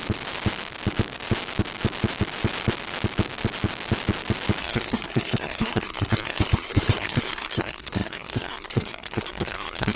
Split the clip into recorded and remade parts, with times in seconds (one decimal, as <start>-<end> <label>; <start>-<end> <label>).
0.0-4.6 recorded; 4.6-10.0 remade